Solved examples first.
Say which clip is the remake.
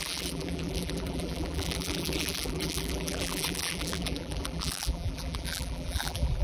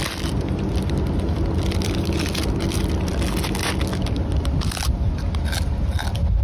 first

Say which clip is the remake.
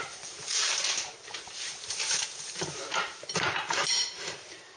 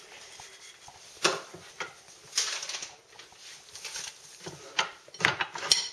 first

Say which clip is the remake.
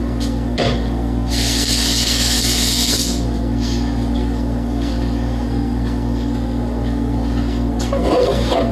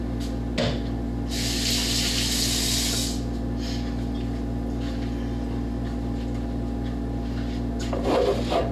first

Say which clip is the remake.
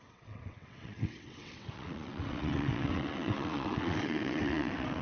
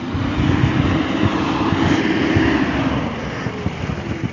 first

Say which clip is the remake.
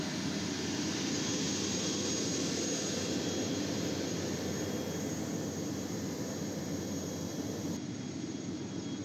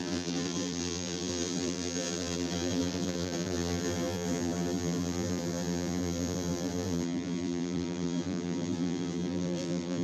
second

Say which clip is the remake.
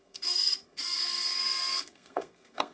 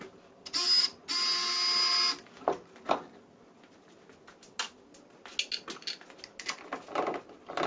first